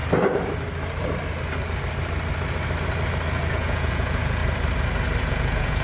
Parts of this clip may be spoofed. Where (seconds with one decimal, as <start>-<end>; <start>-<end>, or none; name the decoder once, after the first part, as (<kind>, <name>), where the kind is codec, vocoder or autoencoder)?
3.5-4.4 (vocoder, Vocos); 5.3-5.8